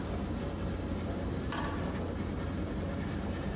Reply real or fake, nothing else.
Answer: real